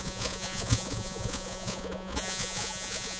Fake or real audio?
fake